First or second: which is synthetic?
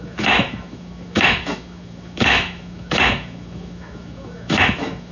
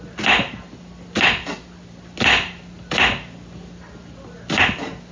first